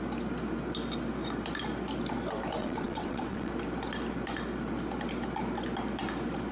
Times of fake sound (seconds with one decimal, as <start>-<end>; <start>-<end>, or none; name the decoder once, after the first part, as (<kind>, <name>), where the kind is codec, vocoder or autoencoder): 2.6-3.5 (vocoder, WaveNeXt)